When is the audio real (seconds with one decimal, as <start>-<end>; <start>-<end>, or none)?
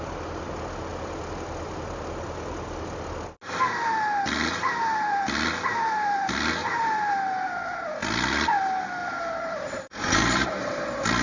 0.0-6.6; 7.2-9.0; 10.6-11.2